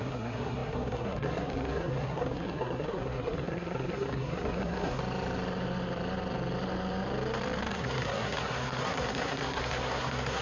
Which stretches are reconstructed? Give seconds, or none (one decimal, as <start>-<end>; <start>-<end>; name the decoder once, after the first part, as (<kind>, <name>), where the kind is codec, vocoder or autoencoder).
0.0-5.0 (codec, SNAC); 7.7-10.4